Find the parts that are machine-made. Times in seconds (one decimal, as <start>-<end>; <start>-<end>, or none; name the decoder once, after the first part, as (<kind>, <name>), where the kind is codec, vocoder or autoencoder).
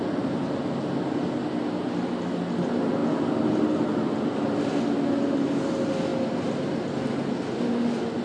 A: none